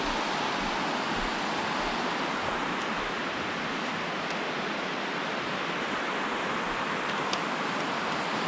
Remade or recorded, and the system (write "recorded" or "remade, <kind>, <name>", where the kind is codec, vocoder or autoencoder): recorded